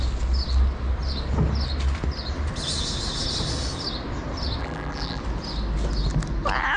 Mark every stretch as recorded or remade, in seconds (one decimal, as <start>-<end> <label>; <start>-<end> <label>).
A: 0.0-4.6 recorded; 4.6-5.2 remade; 5.2-6.8 recorded